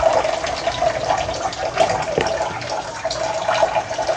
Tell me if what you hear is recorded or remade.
recorded